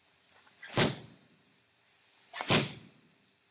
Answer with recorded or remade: recorded